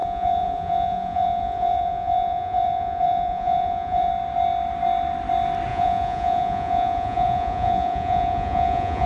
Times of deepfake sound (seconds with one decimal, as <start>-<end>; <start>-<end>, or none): 0.0-4.1; 5.7-9.1